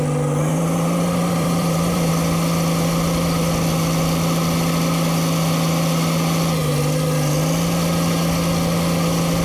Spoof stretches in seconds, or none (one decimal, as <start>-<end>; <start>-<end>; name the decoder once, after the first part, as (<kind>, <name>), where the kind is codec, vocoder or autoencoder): 0.5-2.1 (vocoder, BigVGAN v2)